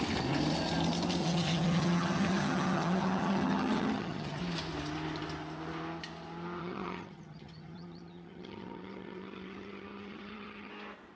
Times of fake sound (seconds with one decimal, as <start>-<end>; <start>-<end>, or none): 1.2-4.4; 6.6-10.7